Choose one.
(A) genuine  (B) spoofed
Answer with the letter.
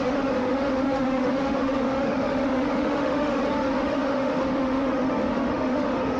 B